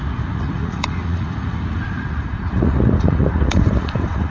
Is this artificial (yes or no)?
yes